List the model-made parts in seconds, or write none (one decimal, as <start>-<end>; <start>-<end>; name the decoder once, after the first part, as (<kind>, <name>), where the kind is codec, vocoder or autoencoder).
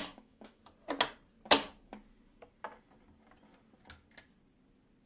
0.0-0.6 (autoencoder, DAC-VAE)